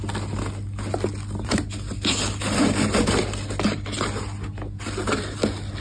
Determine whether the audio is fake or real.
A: real